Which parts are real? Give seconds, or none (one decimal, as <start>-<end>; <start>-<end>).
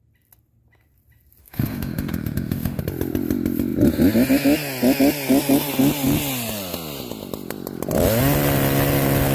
0.0-1.4; 2.8-9.3